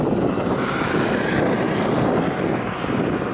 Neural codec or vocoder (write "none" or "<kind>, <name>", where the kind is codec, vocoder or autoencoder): none